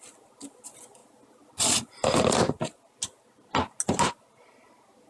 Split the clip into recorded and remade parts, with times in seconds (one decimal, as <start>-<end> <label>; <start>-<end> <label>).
0.0-5.1 recorded